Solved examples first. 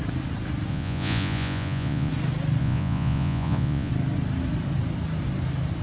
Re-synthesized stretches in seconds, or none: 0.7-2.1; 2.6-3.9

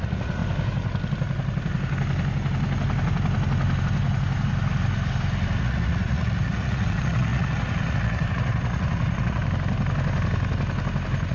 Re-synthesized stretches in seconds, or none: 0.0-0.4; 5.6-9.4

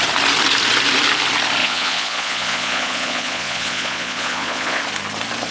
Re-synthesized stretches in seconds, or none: 1.6-4.8

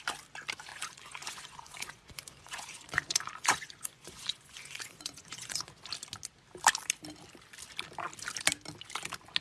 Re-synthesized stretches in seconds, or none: 0.7-5.7

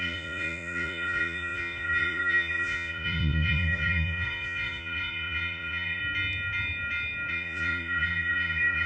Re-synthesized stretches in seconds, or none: 0.0-6.0; 7.3-8.9